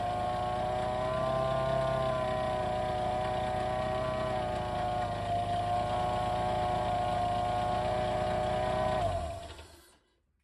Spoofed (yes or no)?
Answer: no